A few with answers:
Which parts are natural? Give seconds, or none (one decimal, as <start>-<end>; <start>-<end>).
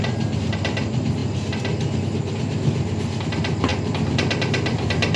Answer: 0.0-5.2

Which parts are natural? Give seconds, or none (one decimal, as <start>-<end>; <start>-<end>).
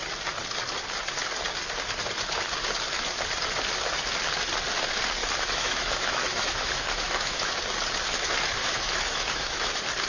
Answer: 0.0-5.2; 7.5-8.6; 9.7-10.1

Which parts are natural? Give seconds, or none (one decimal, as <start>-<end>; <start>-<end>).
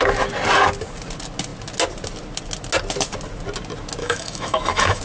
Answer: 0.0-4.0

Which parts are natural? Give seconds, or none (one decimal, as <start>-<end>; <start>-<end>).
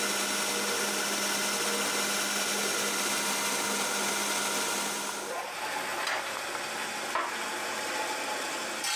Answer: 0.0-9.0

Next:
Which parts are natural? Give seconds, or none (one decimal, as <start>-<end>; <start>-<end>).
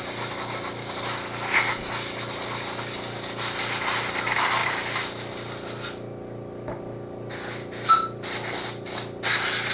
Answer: 0.0-4.6; 5.3-9.7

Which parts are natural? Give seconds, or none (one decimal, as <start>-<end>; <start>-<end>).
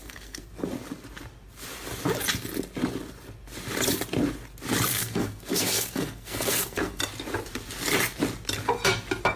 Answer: 0.5-4.9; 7.0-9.4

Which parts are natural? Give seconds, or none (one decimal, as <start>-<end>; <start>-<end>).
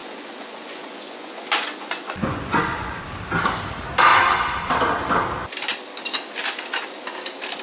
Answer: 3.0-7.6